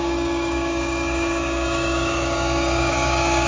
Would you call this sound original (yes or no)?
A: no